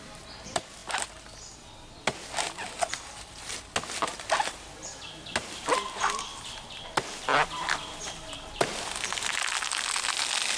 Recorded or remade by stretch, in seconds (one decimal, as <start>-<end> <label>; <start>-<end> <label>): 0.0-10.6 recorded